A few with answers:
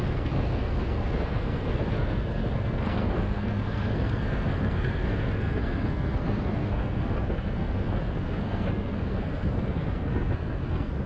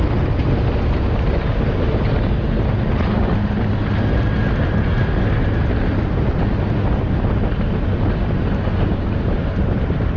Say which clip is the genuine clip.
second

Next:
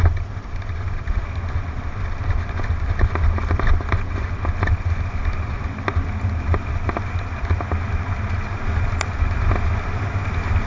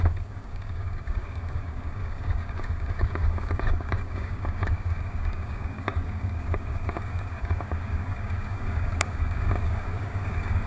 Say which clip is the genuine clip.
first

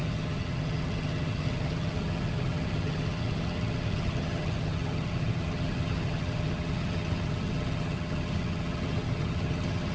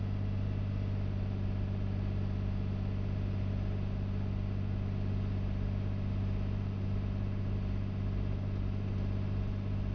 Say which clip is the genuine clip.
second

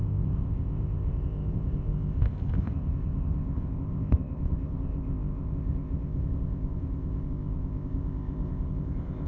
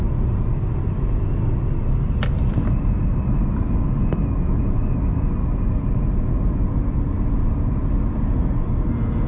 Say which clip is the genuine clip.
second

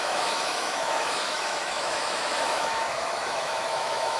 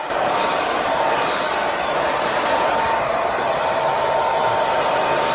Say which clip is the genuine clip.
second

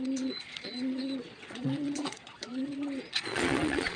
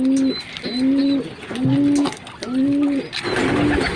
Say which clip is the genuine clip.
second